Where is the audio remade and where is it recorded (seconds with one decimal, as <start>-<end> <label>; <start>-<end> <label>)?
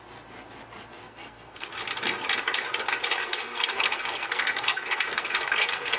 0.0-1.0 recorded; 1.0-1.7 remade; 1.7-3.2 recorded; 3.2-6.0 remade